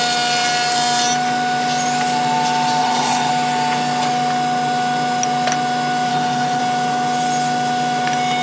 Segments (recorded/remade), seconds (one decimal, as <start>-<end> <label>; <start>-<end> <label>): 0.0-2.8 recorded; 2.8-3.3 remade; 3.3-6.1 recorded; 6.1-6.6 remade; 6.6-8.4 recorded